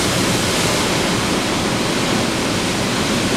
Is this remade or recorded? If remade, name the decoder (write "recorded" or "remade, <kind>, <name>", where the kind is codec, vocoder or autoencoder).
recorded